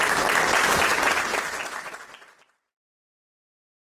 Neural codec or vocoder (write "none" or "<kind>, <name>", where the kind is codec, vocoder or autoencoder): none